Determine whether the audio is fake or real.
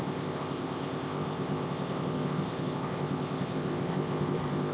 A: fake